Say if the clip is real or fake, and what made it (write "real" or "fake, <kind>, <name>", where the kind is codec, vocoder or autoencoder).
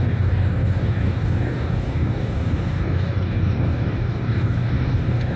fake, codec, DAC